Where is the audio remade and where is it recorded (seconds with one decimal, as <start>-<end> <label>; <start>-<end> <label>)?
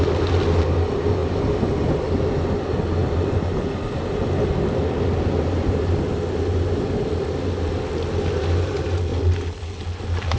0.0-1.2 recorded; 1.2-2.5 remade; 2.5-10.4 recorded